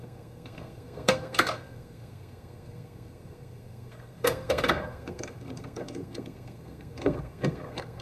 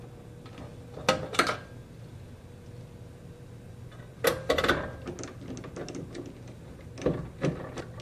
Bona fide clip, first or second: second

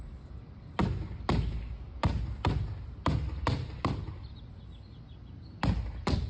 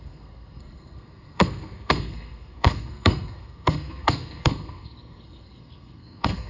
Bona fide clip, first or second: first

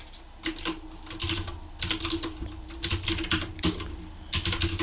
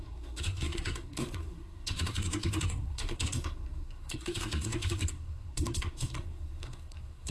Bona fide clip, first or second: first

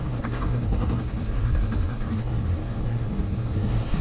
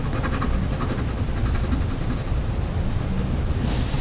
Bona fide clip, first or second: second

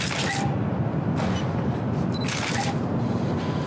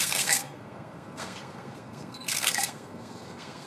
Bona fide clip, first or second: first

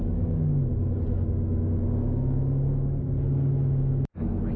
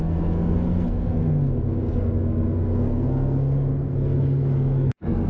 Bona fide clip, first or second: first